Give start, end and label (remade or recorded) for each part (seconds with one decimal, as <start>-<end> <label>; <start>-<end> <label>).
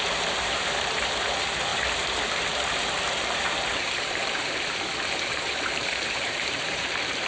0.0-7.3 remade